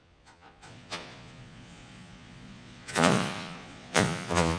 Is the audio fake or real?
fake